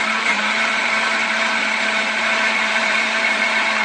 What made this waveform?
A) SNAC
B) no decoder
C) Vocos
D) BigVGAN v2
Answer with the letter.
D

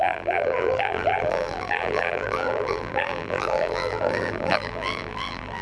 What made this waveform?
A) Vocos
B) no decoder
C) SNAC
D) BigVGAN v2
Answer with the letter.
D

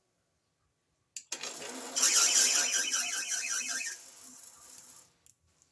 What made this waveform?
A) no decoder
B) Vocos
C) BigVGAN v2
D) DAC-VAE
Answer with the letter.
A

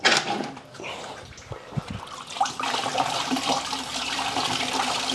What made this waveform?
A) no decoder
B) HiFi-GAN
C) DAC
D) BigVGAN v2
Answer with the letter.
D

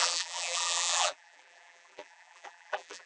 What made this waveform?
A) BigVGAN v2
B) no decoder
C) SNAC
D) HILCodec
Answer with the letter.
A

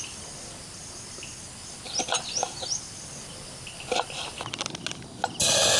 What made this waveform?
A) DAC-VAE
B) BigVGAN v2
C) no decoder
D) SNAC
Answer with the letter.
C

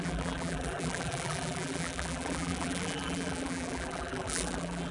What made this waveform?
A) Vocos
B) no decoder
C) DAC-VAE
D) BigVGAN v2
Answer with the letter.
D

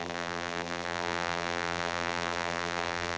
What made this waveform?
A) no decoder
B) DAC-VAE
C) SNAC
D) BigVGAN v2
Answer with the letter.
D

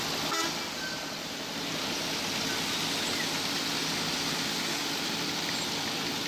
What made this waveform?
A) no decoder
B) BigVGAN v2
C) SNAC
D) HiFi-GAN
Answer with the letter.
A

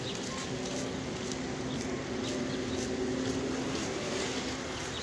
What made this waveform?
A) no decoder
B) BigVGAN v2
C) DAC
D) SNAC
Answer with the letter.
A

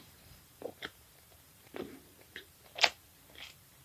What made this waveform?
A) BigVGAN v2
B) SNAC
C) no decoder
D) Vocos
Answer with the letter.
A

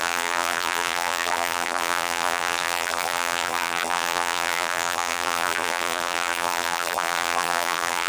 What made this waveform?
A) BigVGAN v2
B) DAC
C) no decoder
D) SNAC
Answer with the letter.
A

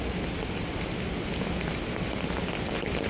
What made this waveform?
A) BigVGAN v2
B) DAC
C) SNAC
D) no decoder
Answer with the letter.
D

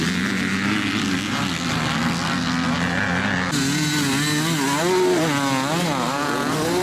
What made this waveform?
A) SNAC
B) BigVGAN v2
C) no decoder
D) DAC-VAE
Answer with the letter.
C